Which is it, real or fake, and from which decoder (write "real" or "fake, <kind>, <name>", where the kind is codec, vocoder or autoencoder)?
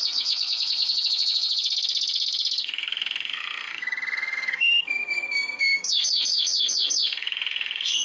fake, codec, SNAC